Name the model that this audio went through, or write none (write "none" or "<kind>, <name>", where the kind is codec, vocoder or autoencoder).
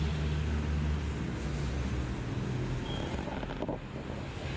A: none